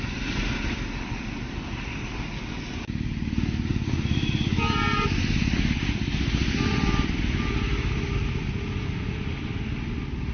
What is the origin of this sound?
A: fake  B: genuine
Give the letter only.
B